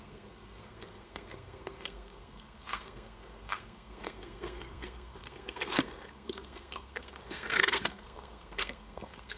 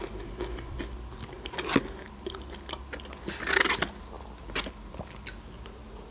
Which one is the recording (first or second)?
second